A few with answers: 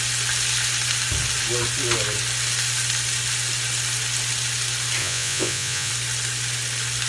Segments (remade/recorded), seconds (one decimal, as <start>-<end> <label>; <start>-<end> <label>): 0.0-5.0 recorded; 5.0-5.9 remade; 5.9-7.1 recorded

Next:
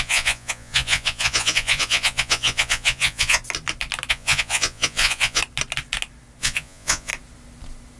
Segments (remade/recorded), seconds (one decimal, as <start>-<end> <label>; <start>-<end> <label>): 0.0-3.4 remade; 3.4-4.1 recorded; 4.1-5.4 remade; 5.4-6.4 recorded; 6.4-7.1 remade; 7.1-8.0 recorded

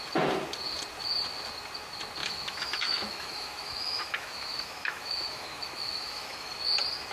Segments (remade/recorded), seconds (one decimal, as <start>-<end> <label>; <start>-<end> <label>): 0.0-2.2 recorded; 2.2-6.5 remade; 6.5-7.1 recorded

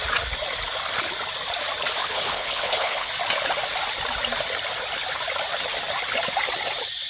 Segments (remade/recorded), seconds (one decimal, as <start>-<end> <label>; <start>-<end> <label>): 0.0-2.0 recorded; 2.0-3.1 remade; 3.1-7.1 recorded